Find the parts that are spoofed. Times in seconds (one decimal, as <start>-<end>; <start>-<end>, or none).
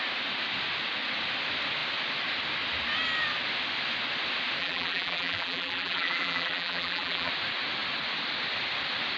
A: 4.6-7.3